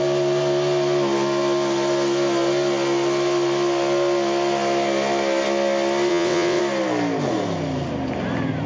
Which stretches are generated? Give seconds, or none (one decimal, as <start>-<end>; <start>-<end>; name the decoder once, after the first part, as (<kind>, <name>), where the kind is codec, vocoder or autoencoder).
6.1-6.6 (vocoder, WaveNeXt)